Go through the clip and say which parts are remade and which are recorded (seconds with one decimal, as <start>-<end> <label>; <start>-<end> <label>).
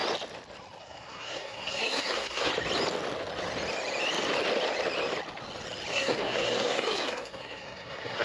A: 0.0-0.8 recorded; 0.8-2.5 remade; 2.5-5.9 recorded; 5.9-8.2 remade